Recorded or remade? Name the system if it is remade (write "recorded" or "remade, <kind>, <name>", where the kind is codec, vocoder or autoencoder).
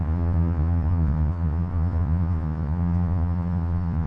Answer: remade, vocoder, Vocos